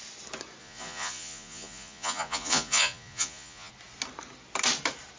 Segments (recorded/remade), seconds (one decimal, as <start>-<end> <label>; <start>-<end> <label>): 0.0-0.6 recorded; 0.6-3.7 remade; 3.7-5.2 recorded